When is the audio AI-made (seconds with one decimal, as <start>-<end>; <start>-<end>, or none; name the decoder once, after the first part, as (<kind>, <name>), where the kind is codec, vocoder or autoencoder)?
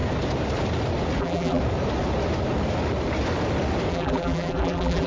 1.2-1.6 (vocoder, BigVGAN v2); 3.9-5.1